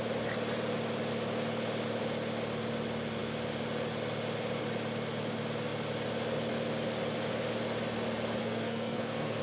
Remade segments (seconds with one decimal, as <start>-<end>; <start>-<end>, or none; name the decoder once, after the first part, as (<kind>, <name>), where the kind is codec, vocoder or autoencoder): 8.4-9.4 (codec, SNAC)